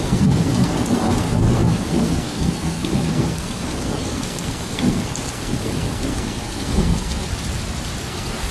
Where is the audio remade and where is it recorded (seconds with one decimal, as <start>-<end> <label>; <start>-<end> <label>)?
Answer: 0.0-7.3 remade; 7.3-8.0 recorded; 8.0-8.5 remade